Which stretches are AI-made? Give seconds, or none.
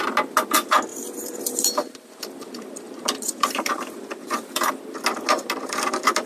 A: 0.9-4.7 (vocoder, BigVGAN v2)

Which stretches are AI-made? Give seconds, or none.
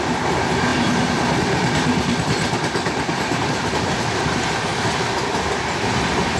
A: 0.7-4.0 (vocoder, BigVGAN v2)